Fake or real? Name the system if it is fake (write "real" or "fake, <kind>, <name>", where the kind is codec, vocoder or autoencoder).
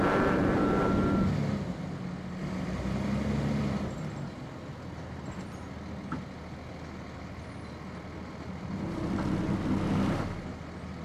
real